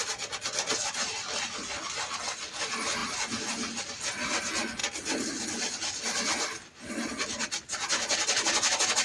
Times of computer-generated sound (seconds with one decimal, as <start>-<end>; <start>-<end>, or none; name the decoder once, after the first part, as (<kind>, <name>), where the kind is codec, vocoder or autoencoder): none